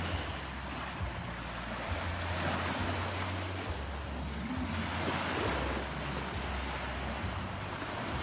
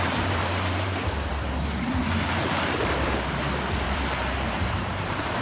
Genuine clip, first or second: first